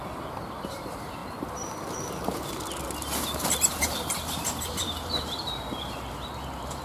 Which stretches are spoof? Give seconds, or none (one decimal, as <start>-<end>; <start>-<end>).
0.7-1.2; 2.8-6.8